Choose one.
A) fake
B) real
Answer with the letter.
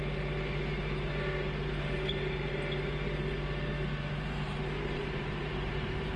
B